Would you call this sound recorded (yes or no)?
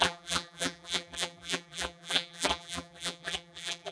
no